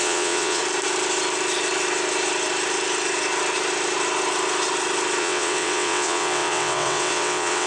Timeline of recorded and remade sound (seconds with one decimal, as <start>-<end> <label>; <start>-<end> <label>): 0.0-0.6 remade; 0.6-5.2 recorded; 5.2-7.7 remade